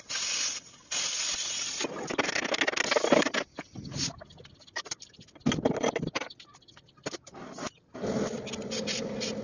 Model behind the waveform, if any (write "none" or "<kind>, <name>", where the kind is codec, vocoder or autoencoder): none